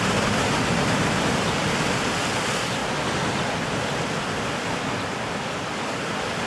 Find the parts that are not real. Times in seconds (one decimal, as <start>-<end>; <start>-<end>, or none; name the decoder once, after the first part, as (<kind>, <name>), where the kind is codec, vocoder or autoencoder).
0.0-2.8 (vocoder, BigVGAN v2); 5.1-6.5

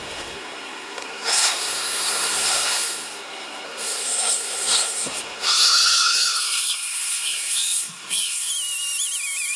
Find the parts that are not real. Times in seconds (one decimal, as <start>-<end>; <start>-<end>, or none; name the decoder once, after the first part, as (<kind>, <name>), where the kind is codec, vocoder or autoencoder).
0.0-8.5 (codec, SNAC)

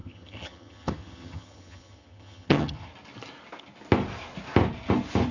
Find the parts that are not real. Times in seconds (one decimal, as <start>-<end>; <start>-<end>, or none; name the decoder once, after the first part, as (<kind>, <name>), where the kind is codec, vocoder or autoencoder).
0.0-2.9 (vocoder, HiFi-GAN)